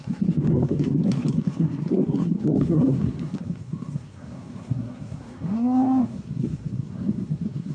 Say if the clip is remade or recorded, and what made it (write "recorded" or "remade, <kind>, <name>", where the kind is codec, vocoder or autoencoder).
remade, codec, SNAC